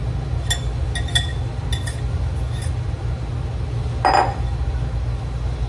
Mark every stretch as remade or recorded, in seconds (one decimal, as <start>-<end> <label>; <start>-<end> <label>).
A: 0.0-5.7 recorded